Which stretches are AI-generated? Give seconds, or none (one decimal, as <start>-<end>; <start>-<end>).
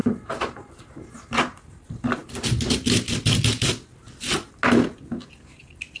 none